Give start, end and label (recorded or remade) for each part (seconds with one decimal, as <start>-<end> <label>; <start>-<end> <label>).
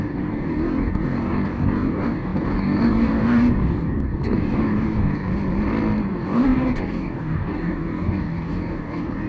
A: 0.0-5.3 remade; 5.3-6.1 recorded; 6.1-9.3 remade